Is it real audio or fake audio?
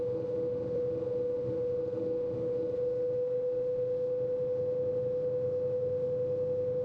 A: fake